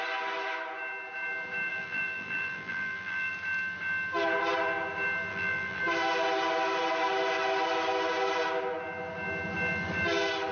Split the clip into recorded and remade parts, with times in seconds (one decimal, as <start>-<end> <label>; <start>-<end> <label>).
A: 0.0-1.7 recorded; 1.7-3.3 remade; 3.3-5.3 recorded; 5.3-5.8 remade; 5.8-10.5 recorded